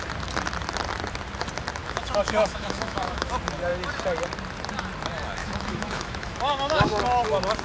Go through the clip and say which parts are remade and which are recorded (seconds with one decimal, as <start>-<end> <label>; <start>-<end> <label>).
0.0-1.8 recorded; 1.8-3.3 remade; 3.3-5.4 recorded; 5.4-7.0 remade; 7.0-7.6 recorded